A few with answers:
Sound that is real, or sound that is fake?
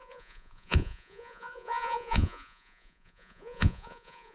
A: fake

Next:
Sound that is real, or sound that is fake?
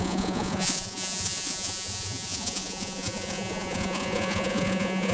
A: fake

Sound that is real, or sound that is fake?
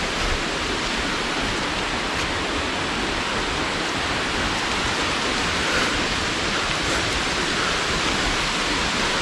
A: real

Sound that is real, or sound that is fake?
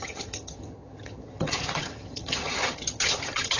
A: fake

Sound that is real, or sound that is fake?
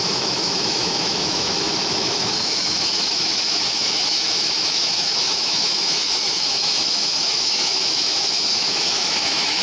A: fake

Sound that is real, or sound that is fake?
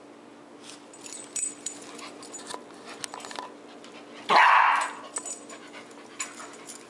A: real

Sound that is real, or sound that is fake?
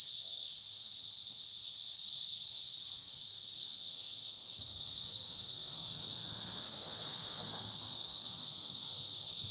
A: fake